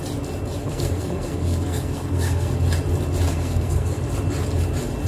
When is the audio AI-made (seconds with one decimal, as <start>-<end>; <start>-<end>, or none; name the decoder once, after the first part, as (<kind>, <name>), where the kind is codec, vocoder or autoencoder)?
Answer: 0.6-2.5 (codec, SNAC); 3.3-4.0